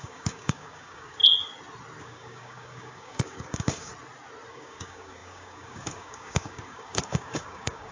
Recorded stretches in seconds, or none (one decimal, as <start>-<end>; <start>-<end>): 1.2-2.0; 3.9-4.5